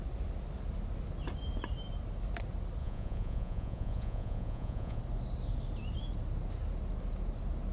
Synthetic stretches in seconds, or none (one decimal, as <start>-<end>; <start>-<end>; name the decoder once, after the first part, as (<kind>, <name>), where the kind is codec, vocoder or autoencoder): 2.8-5.0 (vocoder, Vocos)